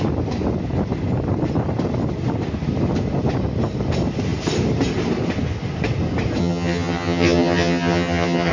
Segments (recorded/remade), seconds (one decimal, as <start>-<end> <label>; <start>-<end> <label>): 0.0-6.4 recorded; 6.4-8.5 remade